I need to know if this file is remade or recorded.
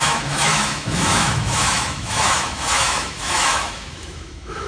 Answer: remade